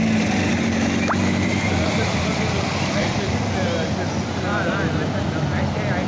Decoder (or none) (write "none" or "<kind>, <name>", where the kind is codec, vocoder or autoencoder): none